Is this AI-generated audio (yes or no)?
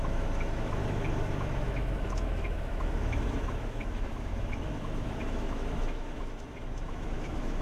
yes